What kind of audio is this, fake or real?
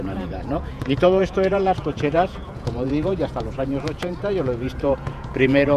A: fake